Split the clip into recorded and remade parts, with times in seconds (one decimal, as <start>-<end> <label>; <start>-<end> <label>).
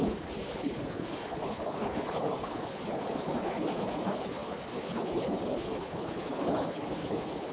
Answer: 0.0-7.5 remade